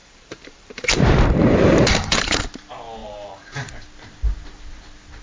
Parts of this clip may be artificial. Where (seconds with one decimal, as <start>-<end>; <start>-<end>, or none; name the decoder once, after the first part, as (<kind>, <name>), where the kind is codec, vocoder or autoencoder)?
0.0-2.4 (vocoder, BigVGAN v2); 3.0-3.7

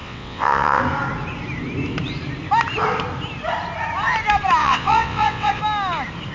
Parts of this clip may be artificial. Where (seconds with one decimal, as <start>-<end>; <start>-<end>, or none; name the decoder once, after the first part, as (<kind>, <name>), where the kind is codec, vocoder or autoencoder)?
0.0-0.8 (vocoder, WaveNeXt); 4.6-5.6

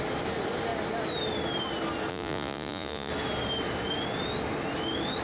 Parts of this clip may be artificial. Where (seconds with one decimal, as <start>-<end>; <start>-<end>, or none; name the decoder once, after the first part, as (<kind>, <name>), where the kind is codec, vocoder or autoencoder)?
2.1-3.1 (vocoder, Vocos)

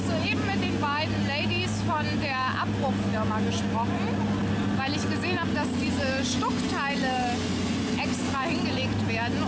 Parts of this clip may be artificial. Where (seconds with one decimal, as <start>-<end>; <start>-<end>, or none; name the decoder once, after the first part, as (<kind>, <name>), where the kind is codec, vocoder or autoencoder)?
none